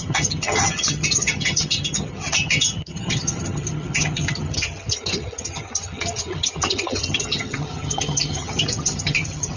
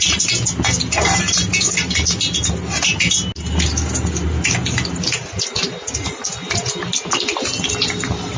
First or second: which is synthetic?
first